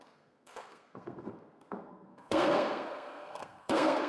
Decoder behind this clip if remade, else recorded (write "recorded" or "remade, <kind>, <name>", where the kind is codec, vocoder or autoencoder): remade, codec, SNAC